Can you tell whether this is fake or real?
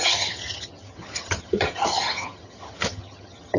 fake